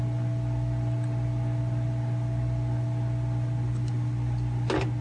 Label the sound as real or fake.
real